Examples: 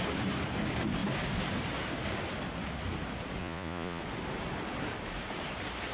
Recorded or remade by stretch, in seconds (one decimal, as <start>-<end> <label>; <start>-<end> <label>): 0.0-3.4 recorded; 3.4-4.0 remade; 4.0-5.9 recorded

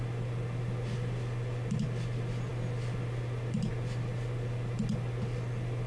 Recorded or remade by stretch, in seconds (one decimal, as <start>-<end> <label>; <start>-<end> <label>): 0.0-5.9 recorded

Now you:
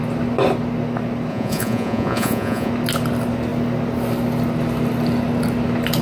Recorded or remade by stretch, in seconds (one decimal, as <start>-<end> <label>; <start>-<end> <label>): 0.0-1.3 recorded; 1.3-2.7 remade; 2.7-6.0 recorded

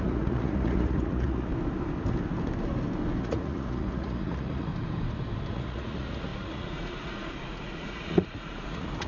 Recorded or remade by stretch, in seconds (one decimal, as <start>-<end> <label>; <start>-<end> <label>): 0.0-1.5 remade; 1.5-3.2 recorded; 3.2-4.7 remade; 4.7-5.5 recorded; 5.5-9.1 remade

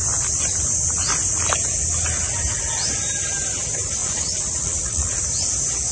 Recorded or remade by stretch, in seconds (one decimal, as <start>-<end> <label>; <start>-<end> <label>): 0.0-4.0 recorded; 4.0-5.2 remade; 5.2-5.9 recorded

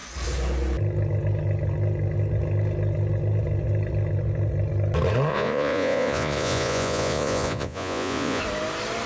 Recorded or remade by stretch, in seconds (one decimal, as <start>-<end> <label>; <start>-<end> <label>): 0.0-5.3 recorded; 5.3-8.4 remade; 8.4-9.1 recorded

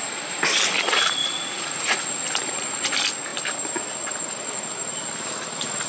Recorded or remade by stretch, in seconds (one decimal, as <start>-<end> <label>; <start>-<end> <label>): 0.0-1.2 recorded; 1.2-2.0 remade; 2.0-5.9 recorded

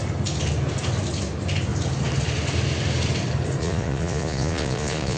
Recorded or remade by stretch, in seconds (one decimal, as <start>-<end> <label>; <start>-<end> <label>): 0.0-3.6 recorded; 3.6-5.2 remade